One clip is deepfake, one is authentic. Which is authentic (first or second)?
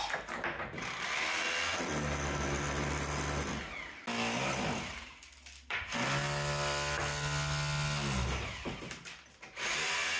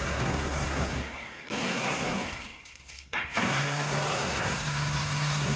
first